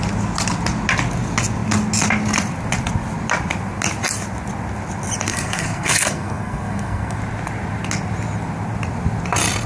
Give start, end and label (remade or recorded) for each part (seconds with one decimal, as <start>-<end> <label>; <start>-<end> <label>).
0.0-5.3 recorded; 5.3-7.2 remade; 7.2-9.7 recorded